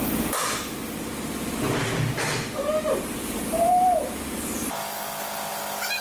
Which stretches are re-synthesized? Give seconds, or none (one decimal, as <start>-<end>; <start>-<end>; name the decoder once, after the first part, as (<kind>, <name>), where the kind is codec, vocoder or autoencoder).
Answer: 3.2-4.0 (vocoder, BigVGAN v2)

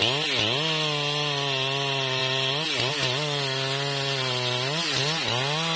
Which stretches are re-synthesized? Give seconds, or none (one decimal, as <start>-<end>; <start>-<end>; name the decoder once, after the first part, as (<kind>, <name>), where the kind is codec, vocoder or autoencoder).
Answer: none

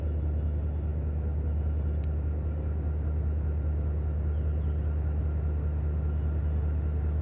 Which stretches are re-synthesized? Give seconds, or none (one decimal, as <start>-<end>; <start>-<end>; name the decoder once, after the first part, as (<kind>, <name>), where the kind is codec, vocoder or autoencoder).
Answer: none

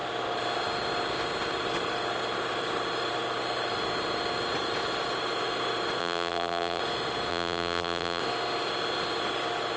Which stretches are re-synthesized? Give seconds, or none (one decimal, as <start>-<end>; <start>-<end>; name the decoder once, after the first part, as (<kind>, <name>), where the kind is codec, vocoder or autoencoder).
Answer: 6.0-6.8 (vocoder, BigVGAN v2); 7.3-8.2

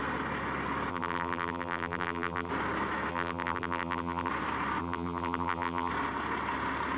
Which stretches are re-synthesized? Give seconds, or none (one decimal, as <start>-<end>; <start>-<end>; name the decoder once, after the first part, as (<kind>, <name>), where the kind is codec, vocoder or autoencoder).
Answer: 0.9-2.5 (vocoder, BigVGAN v2); 3.1-4.3; 4.8-5.9

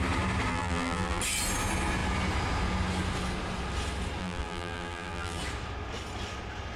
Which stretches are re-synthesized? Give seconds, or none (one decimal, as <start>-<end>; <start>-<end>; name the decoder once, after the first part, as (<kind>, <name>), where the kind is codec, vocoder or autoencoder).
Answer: 0.5-1.2 (vocoder, BigVGAN v2); 4.2-5.4